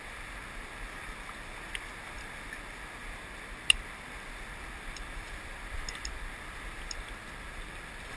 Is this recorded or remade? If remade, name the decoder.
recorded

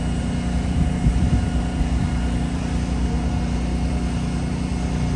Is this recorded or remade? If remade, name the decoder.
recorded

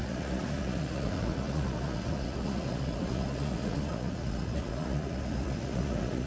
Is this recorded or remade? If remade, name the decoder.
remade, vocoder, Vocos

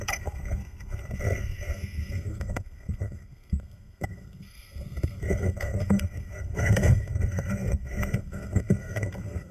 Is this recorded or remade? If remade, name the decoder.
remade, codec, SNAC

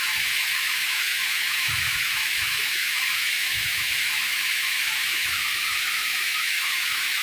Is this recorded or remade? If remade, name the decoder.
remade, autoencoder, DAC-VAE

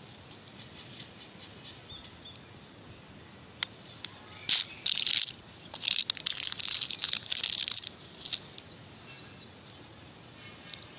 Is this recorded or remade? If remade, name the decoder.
recorded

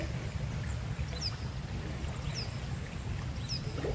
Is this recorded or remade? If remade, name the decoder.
recorded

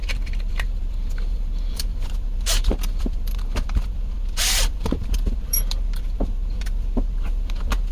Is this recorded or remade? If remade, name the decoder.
remade, vocoder, BigVGAN v2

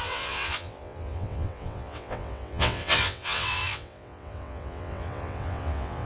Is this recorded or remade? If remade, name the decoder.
remade, vocoder, WaveNeXt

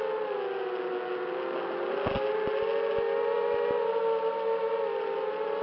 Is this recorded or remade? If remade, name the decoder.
recorded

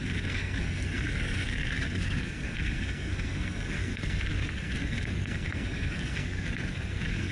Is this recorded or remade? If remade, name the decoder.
remade, codec, SNAC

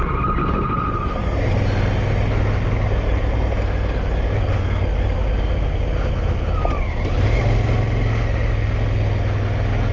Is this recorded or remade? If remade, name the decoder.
recorded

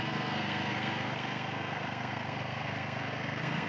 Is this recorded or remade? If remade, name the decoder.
remade, codec, SNAC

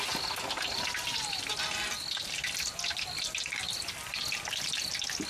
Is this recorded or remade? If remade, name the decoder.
remade, vocoder, BigVGAN v2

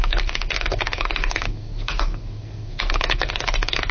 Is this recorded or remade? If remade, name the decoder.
remade, codec, SNAC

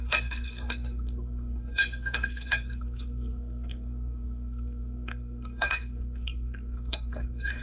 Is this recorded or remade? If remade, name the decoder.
remade, codec, SNAC